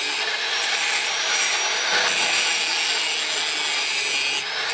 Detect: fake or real real